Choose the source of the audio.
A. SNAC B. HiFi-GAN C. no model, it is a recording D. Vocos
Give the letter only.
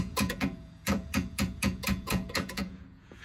D